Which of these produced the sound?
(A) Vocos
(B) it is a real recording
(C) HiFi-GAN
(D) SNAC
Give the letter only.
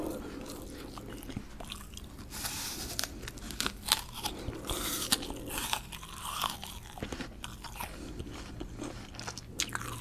B